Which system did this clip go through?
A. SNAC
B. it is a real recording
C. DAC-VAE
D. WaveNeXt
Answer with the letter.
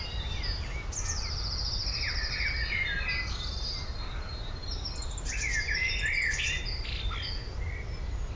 B